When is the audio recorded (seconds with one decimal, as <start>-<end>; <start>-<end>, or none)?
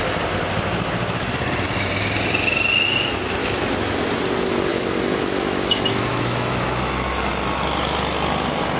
0.0-3.4; 4.0-4.7; 7.3-8.8